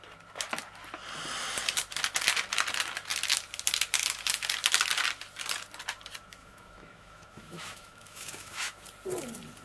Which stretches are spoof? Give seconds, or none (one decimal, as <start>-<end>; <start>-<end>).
6.4-8.8

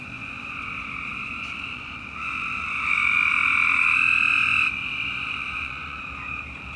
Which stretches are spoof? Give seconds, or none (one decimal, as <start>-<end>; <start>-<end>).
0.0-0.6; 1.1-3.3; 4.3-6.0